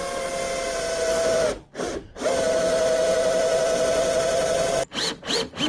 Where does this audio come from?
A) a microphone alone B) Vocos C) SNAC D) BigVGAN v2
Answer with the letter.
A